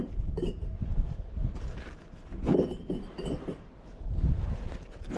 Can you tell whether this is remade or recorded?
recorded